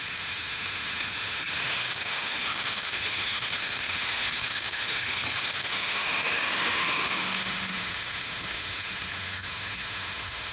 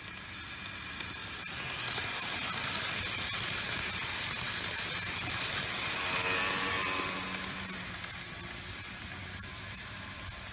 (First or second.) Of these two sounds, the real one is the second